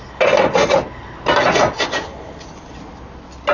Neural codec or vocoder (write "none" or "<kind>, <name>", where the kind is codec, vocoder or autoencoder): none